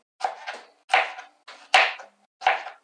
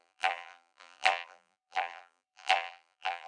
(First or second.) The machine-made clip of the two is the second